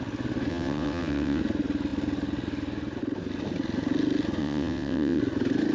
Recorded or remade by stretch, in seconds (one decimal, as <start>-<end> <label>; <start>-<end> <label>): 0.0-0.5 recorded; 0.5-1.4 remade; 1.4-4.4 recorded; 4.4-5.2 remade; 5.2-5.7 recorded